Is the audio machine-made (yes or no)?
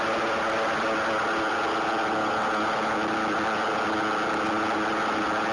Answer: no